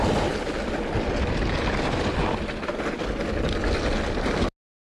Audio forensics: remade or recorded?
recorded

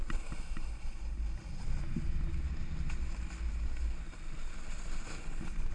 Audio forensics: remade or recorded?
recorded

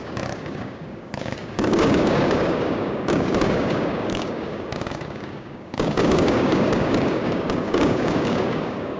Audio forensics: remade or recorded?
remade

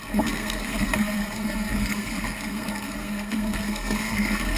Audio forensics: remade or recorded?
remade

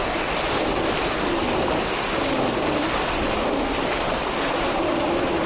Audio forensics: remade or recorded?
recorded